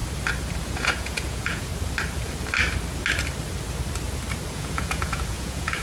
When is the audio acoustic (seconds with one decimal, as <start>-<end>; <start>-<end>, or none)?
0.0-0.6; 1.7-4.5